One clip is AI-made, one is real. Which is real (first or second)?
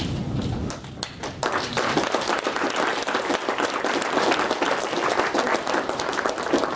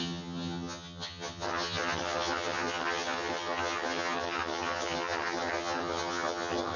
first